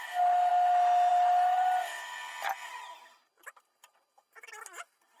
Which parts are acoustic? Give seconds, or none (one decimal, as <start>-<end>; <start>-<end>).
0.0-5.2